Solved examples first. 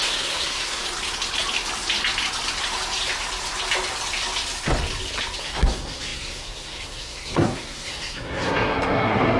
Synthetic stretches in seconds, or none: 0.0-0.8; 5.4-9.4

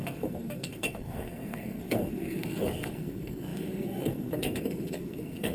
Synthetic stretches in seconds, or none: 0.0-5.5

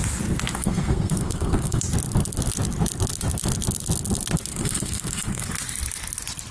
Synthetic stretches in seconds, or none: 0.6-1.8; 4.5-5.5

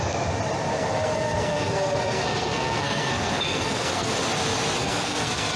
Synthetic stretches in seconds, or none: 0.7-4.1; 4.8-5.6

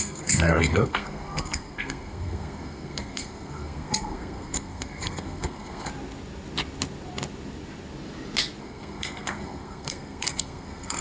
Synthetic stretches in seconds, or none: 0.0-5.9; 8.6-11.0

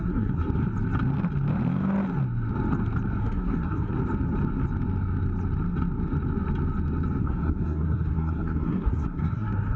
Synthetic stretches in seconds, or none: 0.0-0.4; 3.2-3.9; 7.2-9.8